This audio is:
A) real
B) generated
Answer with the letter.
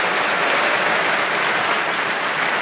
A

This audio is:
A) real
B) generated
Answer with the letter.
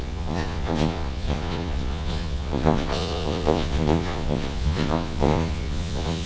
B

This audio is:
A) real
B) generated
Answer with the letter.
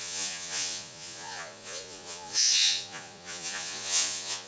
B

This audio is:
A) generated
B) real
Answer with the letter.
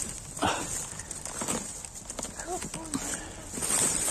B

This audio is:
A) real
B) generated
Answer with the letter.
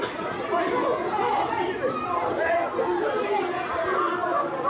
A